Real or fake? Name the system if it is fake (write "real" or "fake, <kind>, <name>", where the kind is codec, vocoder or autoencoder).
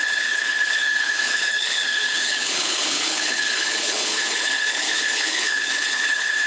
fake, codec, HILCodec